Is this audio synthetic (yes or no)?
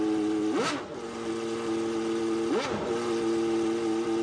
no